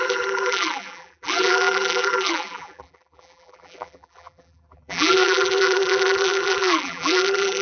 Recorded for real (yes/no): no